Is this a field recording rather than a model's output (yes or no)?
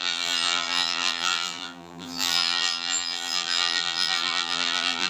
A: no